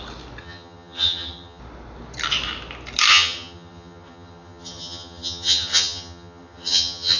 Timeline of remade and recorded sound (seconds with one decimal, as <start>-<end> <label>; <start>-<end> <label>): 0.0-0.4 recorded; 0.4-1.6 remade; 1.6-3.1 recorded; 3.1-7.2 remade

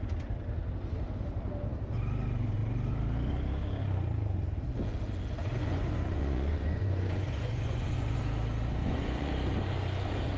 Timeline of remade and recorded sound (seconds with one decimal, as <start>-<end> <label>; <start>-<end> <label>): 0.0-5.4 recorded; 5.4-8.2 remade; 8.2-8.8 recorded; 8.8-9.3 remade; 9.3-10.4 recorded

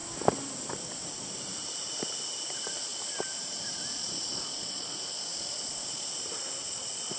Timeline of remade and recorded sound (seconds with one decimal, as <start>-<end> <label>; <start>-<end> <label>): 0.0-0.5 recorded; 0.5-2.9 remade; 2.9-3.4 recorded; 3.4-7.2 remade